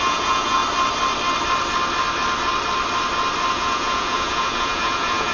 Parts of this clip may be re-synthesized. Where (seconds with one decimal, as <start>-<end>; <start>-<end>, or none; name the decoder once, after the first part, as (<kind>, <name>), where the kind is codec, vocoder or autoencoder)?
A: 0.0-0.6 (vocoder, Vocos); 3.5-5.3